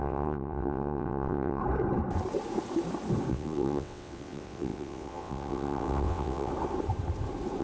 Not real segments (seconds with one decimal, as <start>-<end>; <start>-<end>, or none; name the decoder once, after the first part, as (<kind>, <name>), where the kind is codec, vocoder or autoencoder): 0.0-1.6 (vocoder, WaveNeXt); 3.3-6.5